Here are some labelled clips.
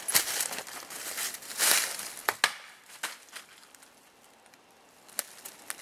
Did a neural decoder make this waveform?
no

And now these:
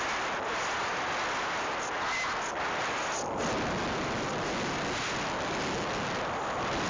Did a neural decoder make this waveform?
no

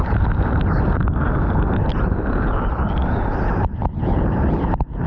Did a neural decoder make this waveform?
no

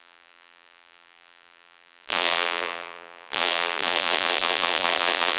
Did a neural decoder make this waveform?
yes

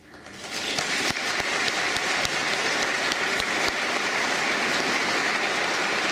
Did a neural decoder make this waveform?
no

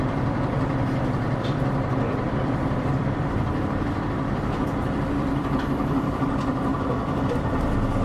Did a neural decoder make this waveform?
yes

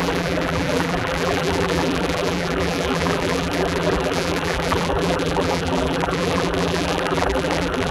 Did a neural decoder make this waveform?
yes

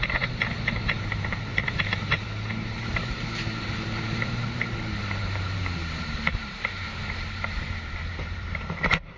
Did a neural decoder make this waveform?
yes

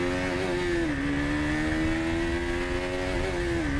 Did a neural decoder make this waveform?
no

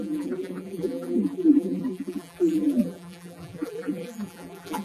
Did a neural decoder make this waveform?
yes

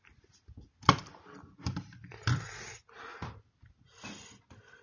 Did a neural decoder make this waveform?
no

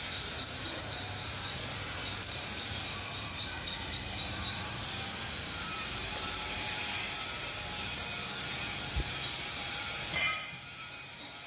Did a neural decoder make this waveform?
yes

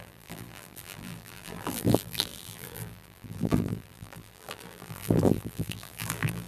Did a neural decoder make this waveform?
yes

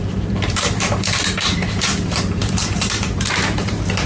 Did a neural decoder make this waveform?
yes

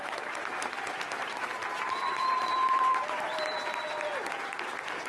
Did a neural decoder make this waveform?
yes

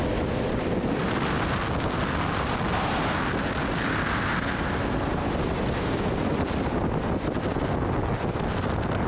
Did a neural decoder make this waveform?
no